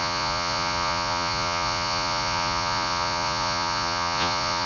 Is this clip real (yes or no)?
no